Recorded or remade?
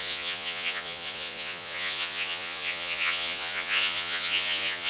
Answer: remade